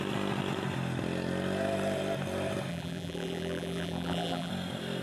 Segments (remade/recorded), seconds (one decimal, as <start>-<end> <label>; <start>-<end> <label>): 0.0-2.7 recorded; 2.7-4.5 remade; 4.5-5.0 recorded